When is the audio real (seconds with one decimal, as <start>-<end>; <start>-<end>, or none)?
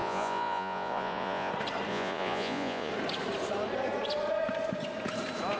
1.5-1.9; 2.9-5.6